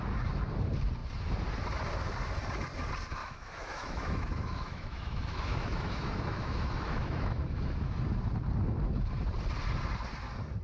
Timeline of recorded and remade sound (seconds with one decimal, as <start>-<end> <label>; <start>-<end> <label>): 0.0-3.2 recorded; 3.2-8.0 remade; 8.0-10.6 recorded